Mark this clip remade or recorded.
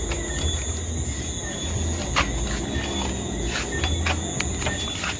recorded